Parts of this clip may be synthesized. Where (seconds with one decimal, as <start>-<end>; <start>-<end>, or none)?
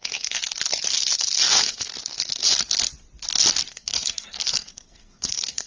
0.0-0.4; 1.5-1.9; 3.7-5.7